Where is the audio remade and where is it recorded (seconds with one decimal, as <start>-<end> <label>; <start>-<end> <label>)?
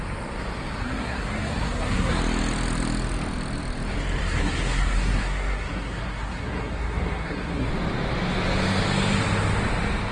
0.0-0.8 recorded; 0.8-2.2 remade; 2.2-4.2 recorded; 4.2-7.7 remade; 7.7-10.1 recorded